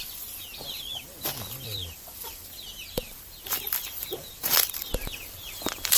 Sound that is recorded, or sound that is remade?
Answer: remade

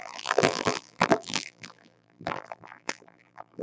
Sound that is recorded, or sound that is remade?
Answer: remade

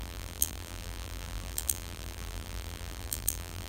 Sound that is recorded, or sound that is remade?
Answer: remade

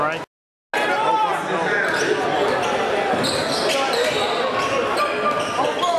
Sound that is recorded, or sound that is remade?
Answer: recorded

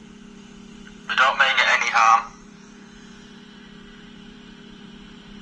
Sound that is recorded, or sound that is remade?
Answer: remade